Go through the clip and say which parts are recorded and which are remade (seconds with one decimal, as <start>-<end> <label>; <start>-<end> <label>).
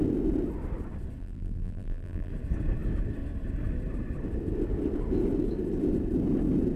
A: 0.0-1.2 recorded; 1.2-2.3 remade; 2.3-6.8 recorded